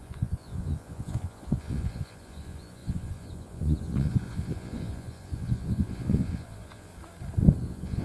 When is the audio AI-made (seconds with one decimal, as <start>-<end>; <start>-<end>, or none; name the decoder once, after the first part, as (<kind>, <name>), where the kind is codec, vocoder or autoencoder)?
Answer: 0.0-6.9 (vocoder, Vocos); 7.6-8.0